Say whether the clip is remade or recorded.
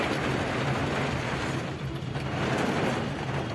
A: recorded